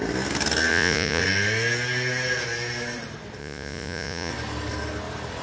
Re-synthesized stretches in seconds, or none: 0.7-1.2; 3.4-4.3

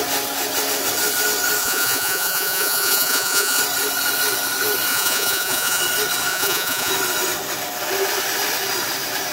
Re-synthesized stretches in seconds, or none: 1.6-3.6; 4.9-5.8; 6.3-6.9

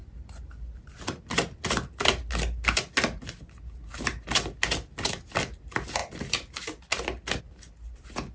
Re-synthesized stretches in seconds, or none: none